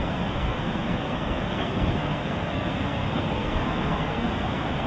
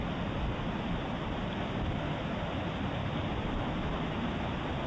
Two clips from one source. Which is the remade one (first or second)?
first